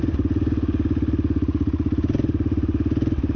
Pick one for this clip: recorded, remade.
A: recorded